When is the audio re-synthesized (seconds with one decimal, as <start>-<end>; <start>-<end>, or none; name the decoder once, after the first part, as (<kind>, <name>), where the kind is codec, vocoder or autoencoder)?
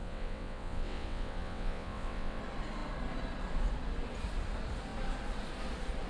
0.0-2.4 (vocoder, WaveNeXt)